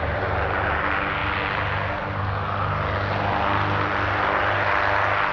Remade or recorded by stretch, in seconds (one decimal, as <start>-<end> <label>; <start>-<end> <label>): 0.0-5.3 recorded